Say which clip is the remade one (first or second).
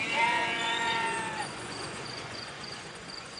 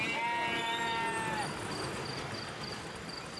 first